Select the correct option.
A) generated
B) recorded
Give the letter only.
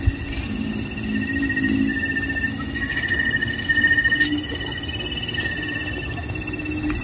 B